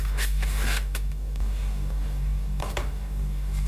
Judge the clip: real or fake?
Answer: fake